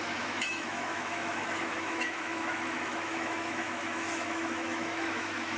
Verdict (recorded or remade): remade